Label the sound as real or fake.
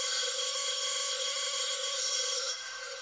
fake